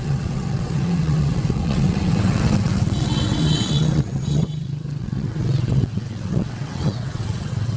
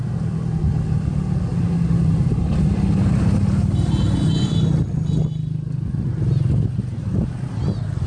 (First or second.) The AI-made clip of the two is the first